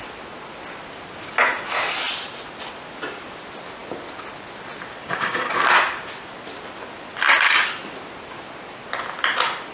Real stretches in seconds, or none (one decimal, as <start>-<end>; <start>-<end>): 0.0-5.0; 5.5-9.7